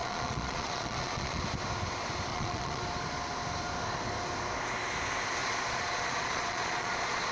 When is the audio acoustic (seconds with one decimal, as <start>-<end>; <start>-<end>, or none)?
1.4-2.3; 2.8-5.4